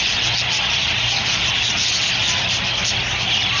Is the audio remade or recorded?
recorded